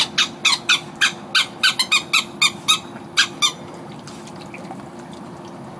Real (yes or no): yes